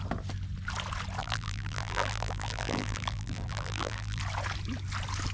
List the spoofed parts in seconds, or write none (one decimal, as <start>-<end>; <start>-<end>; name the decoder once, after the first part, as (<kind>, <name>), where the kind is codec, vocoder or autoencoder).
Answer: 1.2-4.2 (vocoder, BigVGAN v2)